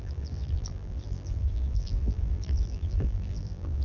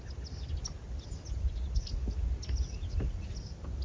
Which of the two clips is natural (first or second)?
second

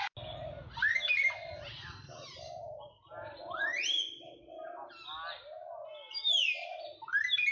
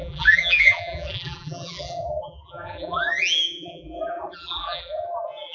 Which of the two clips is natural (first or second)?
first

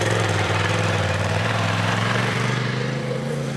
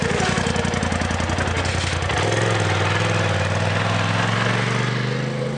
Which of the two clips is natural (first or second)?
second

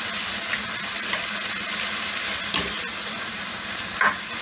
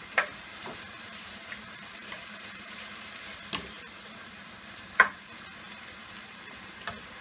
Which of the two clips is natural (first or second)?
first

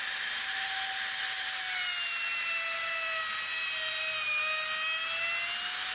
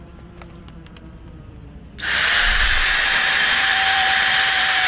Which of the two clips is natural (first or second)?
first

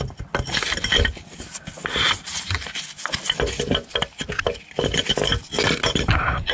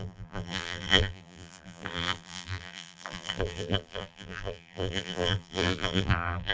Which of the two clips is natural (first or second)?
first